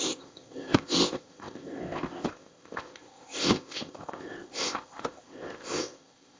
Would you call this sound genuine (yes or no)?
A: no